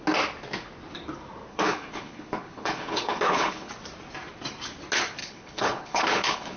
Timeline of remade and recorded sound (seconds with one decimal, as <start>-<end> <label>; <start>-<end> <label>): 0.0-1.5 recorded; 1.5-3.7 remade; 3.7-5.2 recorded; 5.2-6.6 remade